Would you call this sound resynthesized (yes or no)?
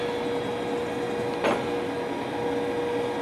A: no